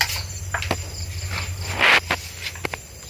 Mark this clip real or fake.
real